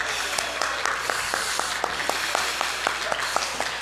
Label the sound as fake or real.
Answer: real